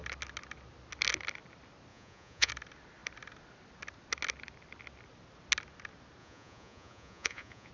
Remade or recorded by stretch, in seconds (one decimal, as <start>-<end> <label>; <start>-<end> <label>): 0.0-1.9 recorded; 1.9-2.5 remade; 2.5-6.2 recorded; 6.2-7.7 remade